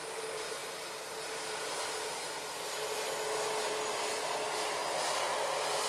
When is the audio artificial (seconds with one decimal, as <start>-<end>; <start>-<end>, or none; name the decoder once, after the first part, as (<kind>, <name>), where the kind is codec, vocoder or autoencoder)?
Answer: none